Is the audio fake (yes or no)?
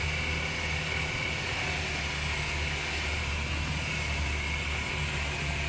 no